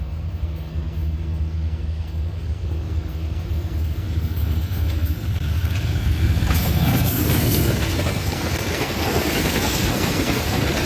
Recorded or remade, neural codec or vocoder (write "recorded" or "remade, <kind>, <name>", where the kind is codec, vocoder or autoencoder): remade, codec, SNAC